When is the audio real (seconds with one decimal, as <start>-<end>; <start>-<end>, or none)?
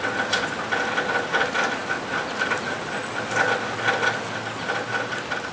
0.0-5.5